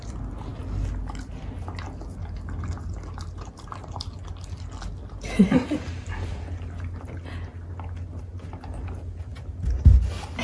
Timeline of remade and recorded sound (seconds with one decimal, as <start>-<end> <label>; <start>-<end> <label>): 0.0-10.4 recorded